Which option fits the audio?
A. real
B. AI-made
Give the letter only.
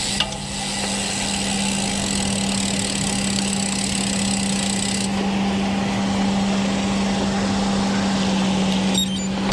A